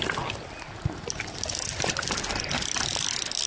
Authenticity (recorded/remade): recorded